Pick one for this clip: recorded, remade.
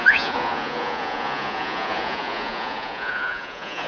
remade